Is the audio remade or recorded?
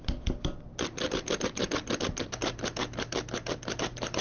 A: recorded